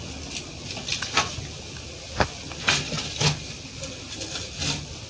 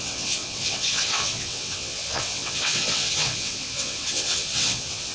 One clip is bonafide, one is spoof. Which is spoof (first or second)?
second